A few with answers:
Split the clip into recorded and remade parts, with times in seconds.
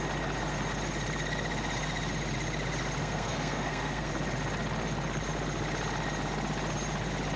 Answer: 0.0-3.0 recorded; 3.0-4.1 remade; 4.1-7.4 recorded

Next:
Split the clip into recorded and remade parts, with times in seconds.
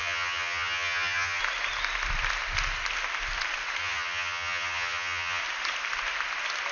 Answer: 0.0-1.4 remade; 1.4-3.8 recorded; 3.8-5.4 remade; 5.4-6.7 recorded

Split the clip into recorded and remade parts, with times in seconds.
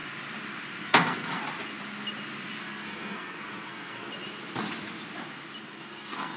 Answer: 0.0-0.8 recorded; 0.8-1.4 remade; 1.4-2.6 recorded; 2.6-4.1 remade; 4.1-5.6 recorded; 5.6-6.4 remade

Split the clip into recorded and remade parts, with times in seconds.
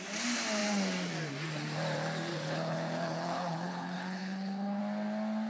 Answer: 0.0-2.3 recorded; 2.3-4.8 remade; 4.8-5.5 recorded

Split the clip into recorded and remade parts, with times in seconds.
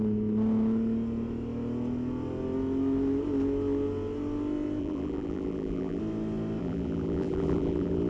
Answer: 0.0-4.8 recorded; 4.8-6.0 remade; 6.0-6.6 recorded; 6.6-8.1 remade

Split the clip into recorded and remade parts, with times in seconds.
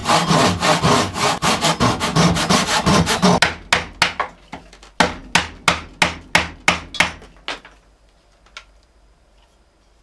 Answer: 0.0-10.0 recorded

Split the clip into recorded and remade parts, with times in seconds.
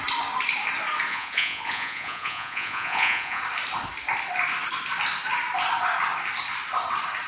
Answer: 0.0-1.1 recorded; 1.1-3.4 remade; 3.4-7.3 recorded